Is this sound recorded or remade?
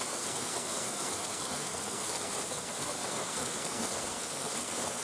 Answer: remade